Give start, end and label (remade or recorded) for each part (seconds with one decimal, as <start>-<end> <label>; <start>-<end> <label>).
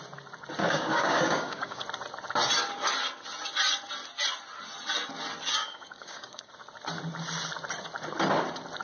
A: 0.0-0.6 recorded; 0.6-1.8 remade; 1.8-5.6 recorded; 5.6-6.5 remade; 6.5-8.8 recorded